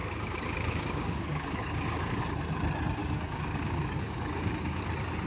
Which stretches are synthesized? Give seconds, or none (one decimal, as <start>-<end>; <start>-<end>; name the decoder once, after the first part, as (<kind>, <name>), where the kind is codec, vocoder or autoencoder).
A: 0.0-2.2 (codec, DAC); 3.0-4.8

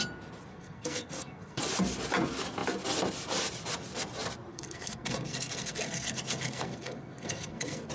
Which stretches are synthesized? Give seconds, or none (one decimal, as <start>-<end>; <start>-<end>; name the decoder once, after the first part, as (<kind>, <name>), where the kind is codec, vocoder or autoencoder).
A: 0.5-1.6 (codec, SNAC); 4.5-7.9

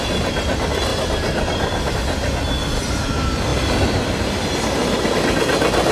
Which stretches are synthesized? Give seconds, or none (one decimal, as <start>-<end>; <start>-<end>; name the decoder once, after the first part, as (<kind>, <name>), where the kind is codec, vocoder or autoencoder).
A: none

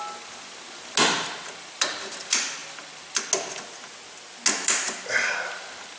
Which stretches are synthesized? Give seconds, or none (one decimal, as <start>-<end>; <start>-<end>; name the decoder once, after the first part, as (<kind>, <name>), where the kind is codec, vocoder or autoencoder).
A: none